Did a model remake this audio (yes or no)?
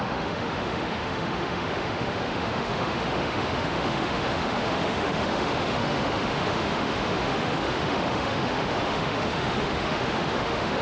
yes